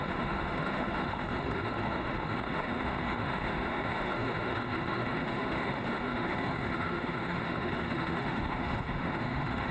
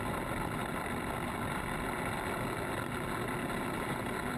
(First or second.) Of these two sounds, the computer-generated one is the first